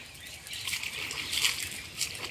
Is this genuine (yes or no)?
yes